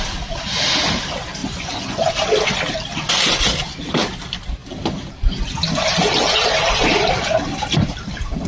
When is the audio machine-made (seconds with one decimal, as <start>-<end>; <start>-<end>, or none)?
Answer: 1.4-2.1